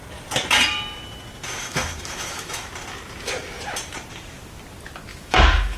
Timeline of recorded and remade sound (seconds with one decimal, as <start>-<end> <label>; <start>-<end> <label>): 0.0-1.6 recorded; 1.6-2.7 remade; 2.7-5.1 recorded; 5.1-5.8 remade